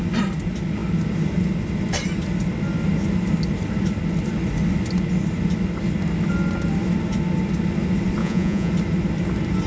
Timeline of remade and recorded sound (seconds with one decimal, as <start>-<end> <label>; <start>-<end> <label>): 0.0-8.2 recorded; 8.2-8.7 remade; 8.7-9.7 recorded